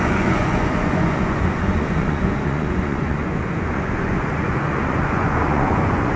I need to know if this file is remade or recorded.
remade